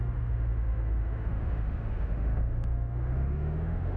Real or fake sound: fake